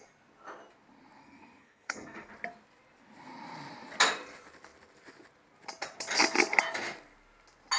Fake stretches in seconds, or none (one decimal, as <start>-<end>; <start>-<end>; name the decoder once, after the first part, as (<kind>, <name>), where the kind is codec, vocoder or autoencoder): 1.2-2.3 (codec, SNAC)